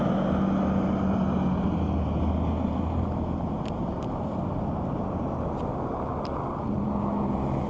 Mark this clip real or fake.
real